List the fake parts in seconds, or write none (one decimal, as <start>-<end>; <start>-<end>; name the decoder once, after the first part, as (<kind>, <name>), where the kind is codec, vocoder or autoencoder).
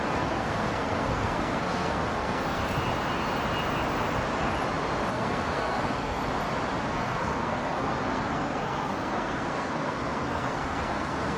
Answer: 0.0-2.6 (codec, SNAC); 5.1-6.2; 6.9-11.4